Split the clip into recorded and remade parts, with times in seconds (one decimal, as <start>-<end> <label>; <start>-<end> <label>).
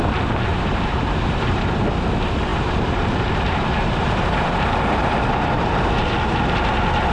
0.0-0.5 recorded; 0.5-1.8 remade; 1.8-2.5 recorded; 2.5-5.6 remade; 5.6-7.1 recorded